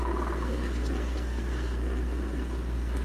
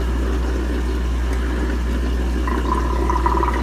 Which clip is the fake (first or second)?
first